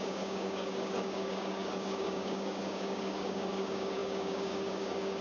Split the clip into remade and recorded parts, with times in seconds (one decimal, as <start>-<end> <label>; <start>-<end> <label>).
0.0-5.2 remade